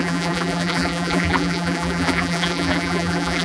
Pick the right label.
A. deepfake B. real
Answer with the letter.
A